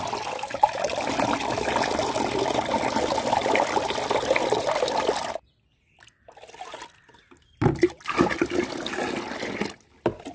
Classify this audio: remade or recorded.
recorded